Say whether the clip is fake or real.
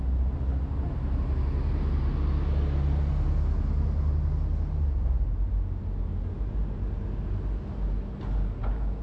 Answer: real